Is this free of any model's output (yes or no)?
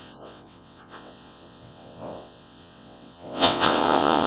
no